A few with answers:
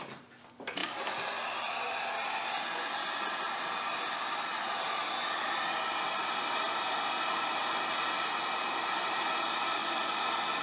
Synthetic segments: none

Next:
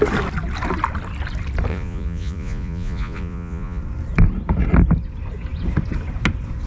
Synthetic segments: 1.7-3.8 (vocoder, Vocos)